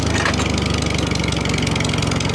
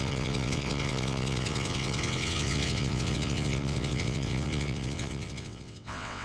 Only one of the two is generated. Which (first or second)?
second